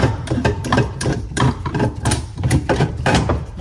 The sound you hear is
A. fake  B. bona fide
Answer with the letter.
A